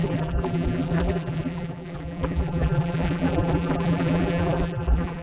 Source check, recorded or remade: remade